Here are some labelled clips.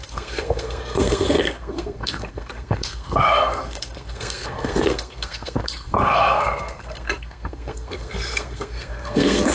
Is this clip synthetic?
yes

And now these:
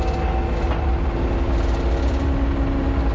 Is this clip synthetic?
no